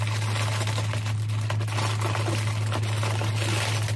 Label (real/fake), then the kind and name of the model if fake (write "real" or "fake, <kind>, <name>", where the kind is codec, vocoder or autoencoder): real